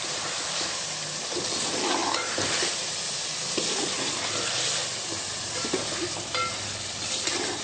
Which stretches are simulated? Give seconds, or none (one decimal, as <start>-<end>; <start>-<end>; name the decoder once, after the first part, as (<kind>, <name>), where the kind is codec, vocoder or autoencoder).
none